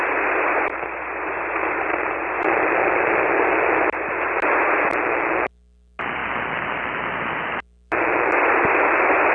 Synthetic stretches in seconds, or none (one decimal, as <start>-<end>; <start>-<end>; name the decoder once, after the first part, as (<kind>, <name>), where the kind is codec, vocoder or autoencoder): 2.2-3.2 (vocoder, BigVGAN v2); 6.2-9.3